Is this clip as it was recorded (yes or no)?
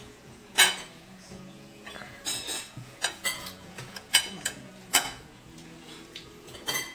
no